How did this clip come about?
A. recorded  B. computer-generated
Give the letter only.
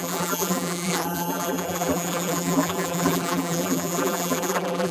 B